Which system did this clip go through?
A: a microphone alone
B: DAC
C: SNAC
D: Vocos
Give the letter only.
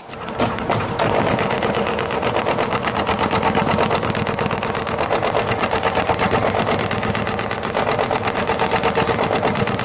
A